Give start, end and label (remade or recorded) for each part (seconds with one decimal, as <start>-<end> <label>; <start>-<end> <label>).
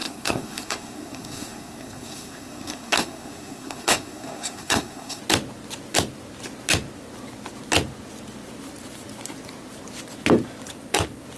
0.0-5.2 remade; 5.2-11.4 recorded